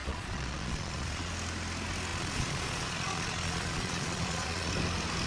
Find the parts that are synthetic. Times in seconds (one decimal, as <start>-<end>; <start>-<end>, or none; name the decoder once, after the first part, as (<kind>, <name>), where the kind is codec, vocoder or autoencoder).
0.0-1.3 (vocoder, Vocos); 2.1-4.7